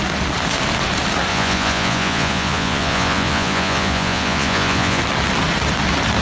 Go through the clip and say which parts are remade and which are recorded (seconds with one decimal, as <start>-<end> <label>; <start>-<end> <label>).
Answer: 0.0-1.3 recorded; 1.3-5.0 remade; 5.0-6.2 recorded

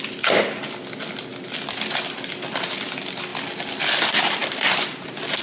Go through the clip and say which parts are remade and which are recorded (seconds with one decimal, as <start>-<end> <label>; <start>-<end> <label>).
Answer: 0.0-5.4 recorded